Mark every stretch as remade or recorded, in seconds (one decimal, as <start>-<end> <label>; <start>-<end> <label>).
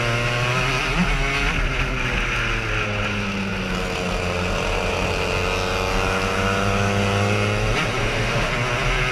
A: 0.0-8.0 recorded; 8.0-8.5 remade; 8.5-9.1 recorded